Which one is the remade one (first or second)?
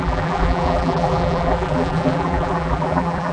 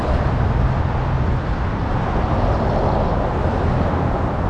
first